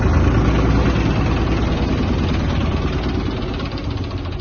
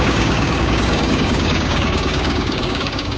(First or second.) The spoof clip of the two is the second